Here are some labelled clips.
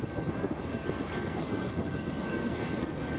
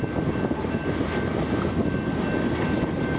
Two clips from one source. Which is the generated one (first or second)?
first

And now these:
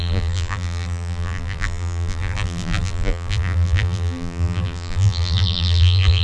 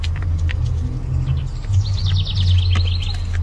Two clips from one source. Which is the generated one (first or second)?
first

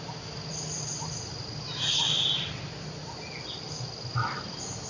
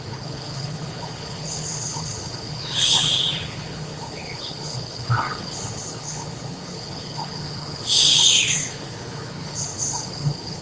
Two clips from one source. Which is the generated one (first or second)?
second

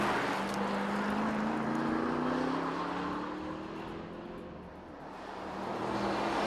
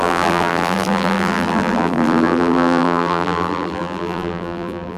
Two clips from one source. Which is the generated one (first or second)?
second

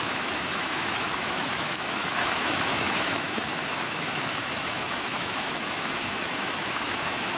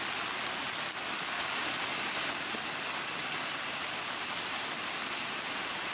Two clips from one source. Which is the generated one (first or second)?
first